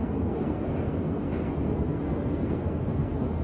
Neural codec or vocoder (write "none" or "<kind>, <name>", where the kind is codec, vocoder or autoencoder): codec, SNAC